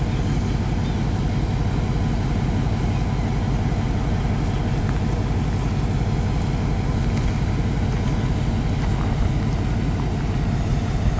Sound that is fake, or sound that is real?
real